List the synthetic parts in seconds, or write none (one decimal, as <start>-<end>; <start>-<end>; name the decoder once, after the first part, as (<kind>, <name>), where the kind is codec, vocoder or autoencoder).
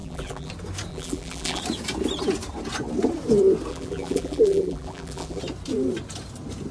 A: 0.0-0.5 (vocoder, BigVGAN v2); 0.9-1.6; 3.7-5.4